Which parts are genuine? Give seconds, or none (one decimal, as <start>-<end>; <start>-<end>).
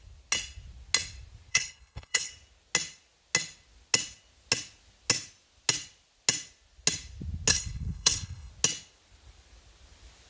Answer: 0.0-1.5; 2.3-7.5; 8.5-10.3